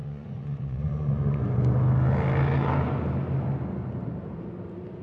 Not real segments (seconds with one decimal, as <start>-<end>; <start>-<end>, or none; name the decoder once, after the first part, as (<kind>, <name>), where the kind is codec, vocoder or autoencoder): 0.0-1.4 (vocoder, Vocos)